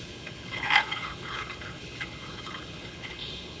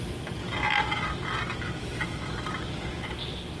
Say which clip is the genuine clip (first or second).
second